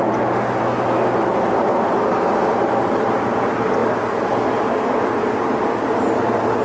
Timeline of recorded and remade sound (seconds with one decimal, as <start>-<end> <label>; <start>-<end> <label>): 0.0-6.6 recorded